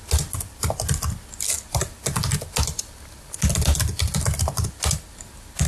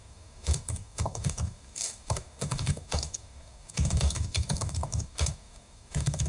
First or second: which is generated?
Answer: second